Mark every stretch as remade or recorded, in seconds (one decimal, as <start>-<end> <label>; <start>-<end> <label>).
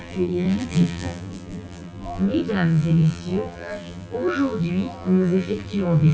0.0-6.1 remade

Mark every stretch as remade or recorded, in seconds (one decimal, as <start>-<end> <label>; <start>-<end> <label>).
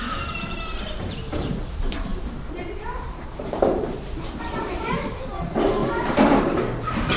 0.0-7.2 remade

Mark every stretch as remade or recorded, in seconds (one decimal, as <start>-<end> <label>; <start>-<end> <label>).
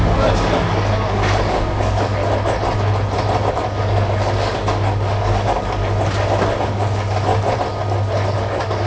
0.0-2.2 remade; 2.2-3.5 recorded; 3.5-5.8 remade; 5.8-6.6 recorded; 6.6-7.3 remade; 7.3-8.3 recorded; 8.3-8.9 remade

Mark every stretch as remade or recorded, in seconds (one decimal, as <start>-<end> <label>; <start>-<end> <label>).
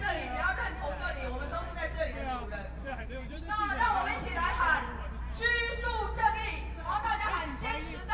0.0-2.8 recorded; 2.8-6.5 remade; 6.5-8.1 recorded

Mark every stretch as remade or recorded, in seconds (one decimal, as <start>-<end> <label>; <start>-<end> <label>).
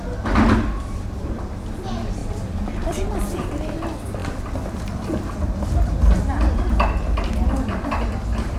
0.0-2.2 recorded; 2.2-3.5 remade; 3.5-4.2 recorded; 4.2-5.1 remade; 5.1-8.6 recorded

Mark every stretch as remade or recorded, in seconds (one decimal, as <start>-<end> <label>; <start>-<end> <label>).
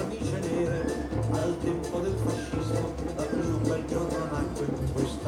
0.0-5.3 recorded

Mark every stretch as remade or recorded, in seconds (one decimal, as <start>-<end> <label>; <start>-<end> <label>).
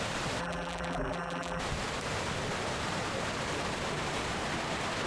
0.0-0.4 recorded; 0.4-1.6 remade; 1.6-5.1 recorded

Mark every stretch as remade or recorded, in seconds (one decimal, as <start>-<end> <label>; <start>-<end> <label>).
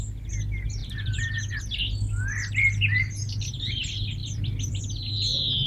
0.0-0.8 recorded; 0.8-1.6 remade; 1.6-4.2 recorded; 4.2-4.8 remade; 4.8-5.7 recorded